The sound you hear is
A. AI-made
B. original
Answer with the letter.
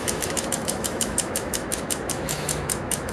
A